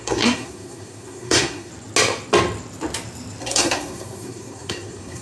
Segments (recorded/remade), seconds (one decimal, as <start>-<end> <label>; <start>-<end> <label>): 0.0-1.7 remade; 1.7-3.4 recorded; 3.4-5.2 remade